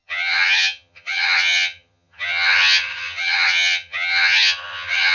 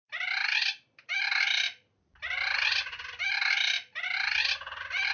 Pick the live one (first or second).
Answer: second